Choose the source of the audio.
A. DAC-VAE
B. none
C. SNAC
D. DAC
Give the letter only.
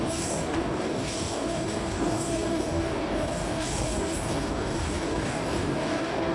D